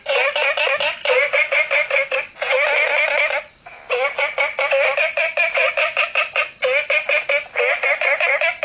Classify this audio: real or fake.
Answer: real